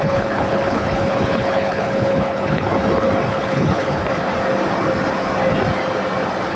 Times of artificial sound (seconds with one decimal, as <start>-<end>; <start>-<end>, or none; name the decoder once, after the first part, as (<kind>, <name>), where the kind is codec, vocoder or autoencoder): 0.0-2.7 (codec, HILCodec); 3.3-4.0